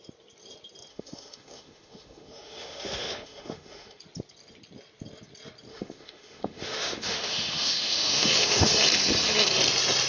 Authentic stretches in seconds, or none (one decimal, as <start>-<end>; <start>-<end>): 0.0-0.9; 4.0-5.7; 8.7-10.1